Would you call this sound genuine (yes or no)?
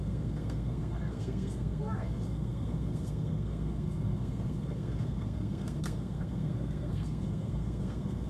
no